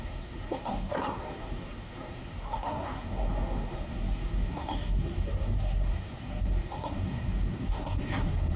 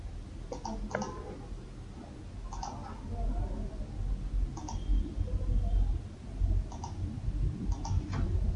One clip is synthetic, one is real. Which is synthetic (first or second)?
first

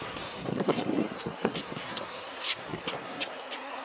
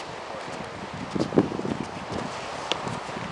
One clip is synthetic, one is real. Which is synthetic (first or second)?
first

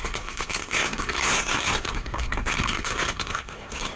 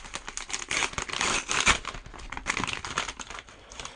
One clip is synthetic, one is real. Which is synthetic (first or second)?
first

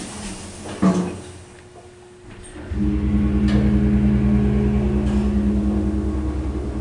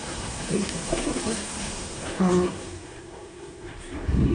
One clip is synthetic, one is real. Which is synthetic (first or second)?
second